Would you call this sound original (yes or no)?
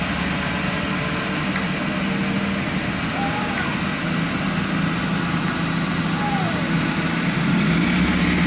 yes